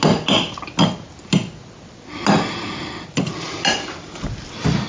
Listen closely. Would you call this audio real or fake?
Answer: real